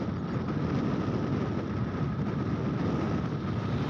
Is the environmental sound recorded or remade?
recorded